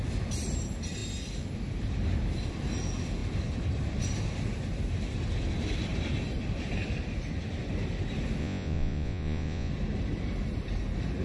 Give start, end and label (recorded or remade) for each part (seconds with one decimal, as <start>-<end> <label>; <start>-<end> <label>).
0.0-8.4 recorded; 8.4-9.7 remade; 9.7-11.2 recorded